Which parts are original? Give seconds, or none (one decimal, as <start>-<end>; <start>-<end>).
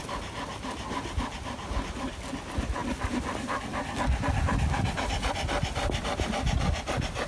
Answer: 0.0-7.3